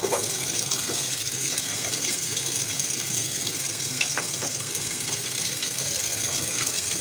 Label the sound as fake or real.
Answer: fake